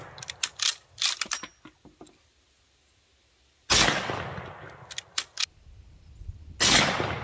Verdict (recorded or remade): recorded